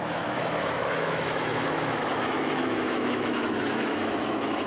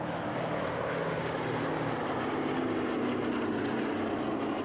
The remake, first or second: first